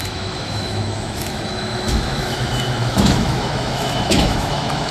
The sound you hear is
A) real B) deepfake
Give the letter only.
B